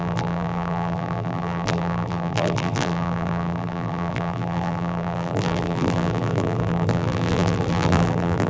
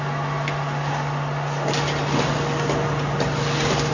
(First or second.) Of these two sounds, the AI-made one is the first